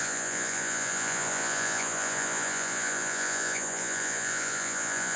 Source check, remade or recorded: remade